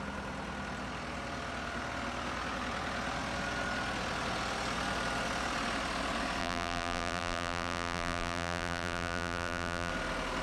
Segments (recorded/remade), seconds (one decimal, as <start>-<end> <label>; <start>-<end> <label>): 0.0-6.4 recorded; 6.4-9.9 remade; 9.9-10.4 recorded